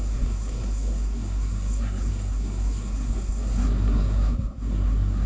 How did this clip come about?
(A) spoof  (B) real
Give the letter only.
A